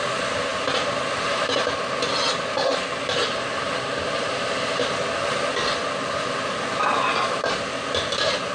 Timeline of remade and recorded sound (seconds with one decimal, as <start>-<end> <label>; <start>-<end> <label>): 0.0-8.5 recorded